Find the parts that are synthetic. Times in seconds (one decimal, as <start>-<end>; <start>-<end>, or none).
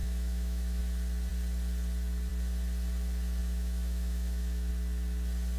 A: 0.0-0.8; 3.4-4.7